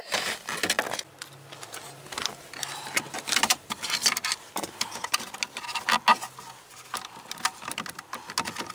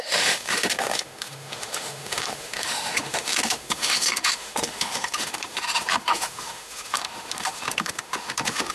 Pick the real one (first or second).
first